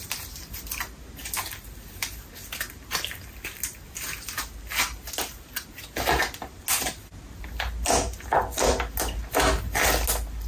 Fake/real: real